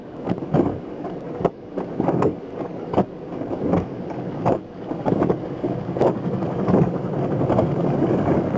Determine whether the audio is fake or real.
fake